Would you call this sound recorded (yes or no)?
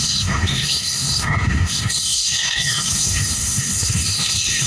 no